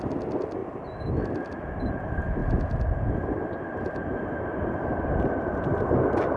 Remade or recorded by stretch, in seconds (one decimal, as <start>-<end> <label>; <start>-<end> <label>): 0.0-6.4 recorded